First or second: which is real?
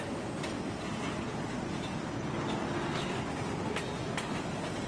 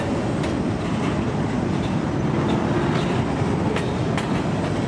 first